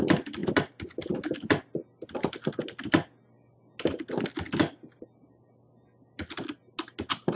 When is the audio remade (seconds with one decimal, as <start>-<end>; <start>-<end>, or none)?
none